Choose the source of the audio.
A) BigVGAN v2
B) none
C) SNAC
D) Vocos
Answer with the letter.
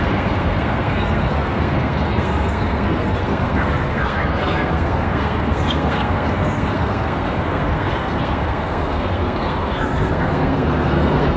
C